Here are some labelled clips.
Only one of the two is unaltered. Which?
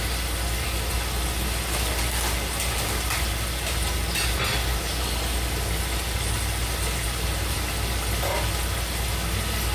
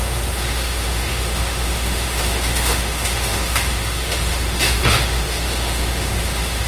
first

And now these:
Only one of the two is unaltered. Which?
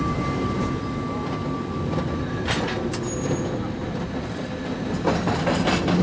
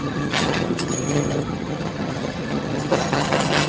first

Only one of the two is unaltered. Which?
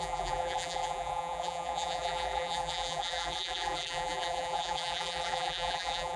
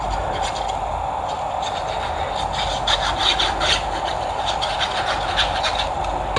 second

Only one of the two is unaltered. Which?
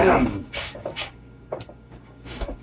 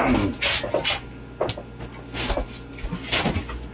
second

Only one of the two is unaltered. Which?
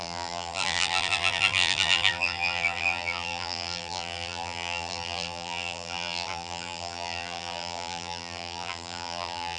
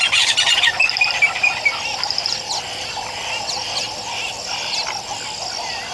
second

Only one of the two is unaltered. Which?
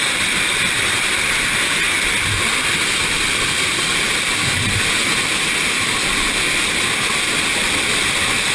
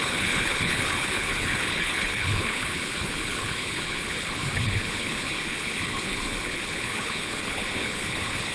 first